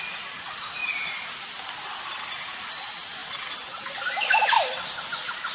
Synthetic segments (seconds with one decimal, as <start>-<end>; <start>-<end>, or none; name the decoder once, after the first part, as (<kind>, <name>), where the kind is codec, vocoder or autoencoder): none

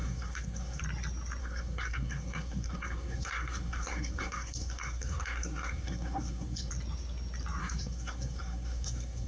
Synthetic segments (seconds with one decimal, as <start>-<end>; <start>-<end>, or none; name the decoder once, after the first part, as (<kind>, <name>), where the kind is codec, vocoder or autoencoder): 0.0-0.8 (codec, SNAC); 1.4-6.7; 7.6-9.3

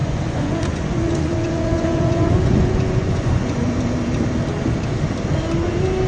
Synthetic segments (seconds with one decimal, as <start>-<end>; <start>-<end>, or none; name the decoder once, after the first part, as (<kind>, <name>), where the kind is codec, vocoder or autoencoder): 0.0-3.7 (vocoder, Vocos)

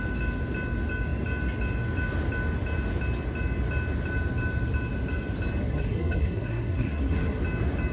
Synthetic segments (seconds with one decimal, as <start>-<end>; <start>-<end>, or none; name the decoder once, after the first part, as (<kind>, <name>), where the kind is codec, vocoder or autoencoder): 5.6-7.4 (codec, SNAC)